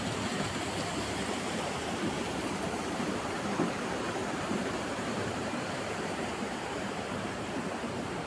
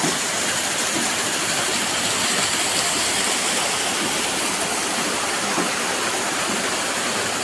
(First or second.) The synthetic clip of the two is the first